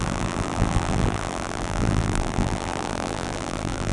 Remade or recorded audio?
remade